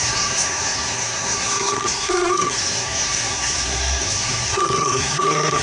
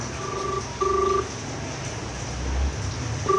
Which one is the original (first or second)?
second